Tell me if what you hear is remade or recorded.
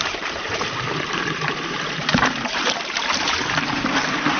remade